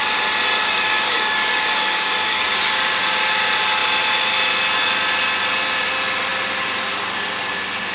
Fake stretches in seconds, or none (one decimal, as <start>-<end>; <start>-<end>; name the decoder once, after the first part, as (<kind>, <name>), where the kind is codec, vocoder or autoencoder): 0.6-3.0 (codec, DAC)